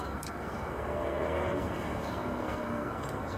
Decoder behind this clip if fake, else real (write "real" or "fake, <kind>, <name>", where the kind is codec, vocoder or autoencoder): fake, codec, SNAC